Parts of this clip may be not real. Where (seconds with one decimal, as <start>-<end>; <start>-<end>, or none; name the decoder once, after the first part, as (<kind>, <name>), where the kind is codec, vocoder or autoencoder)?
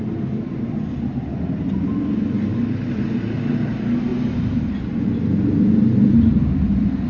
1.1-1.7 (vocoder, BigVGAN v2); 2.5-3.4